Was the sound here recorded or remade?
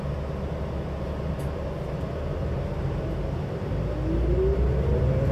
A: recorded